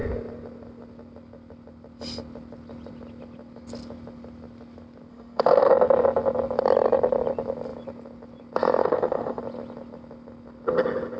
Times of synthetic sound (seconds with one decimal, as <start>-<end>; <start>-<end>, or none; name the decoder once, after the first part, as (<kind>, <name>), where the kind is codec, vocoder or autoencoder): 5.1-5.7 (autoencoder, DAC-VAE); 8.8-9.4